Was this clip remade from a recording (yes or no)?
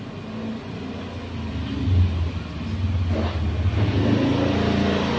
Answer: no